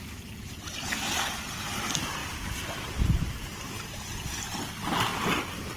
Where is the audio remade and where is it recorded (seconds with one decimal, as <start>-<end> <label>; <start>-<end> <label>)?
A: 0.0-2.2 recorded; 2.2-3.6 remade; 3.6-5.1 recorded; 5.1-5.8 remade